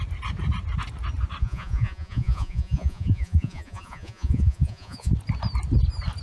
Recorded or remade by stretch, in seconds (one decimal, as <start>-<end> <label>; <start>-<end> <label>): 0.0-1.4 recorded; 1.4-5.1 remade; 5.1-6.2 recorded